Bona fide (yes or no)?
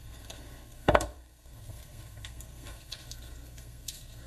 no